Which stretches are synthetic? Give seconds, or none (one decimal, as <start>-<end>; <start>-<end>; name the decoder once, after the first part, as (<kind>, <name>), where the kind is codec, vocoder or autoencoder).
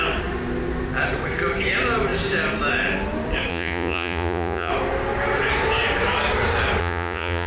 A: 3.5-4.7 (vocoder, Vocos); 6.8-7.5